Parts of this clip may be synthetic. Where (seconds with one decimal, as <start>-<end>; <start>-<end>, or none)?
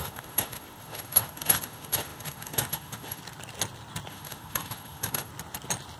0.0-3.2; 4.1-5.3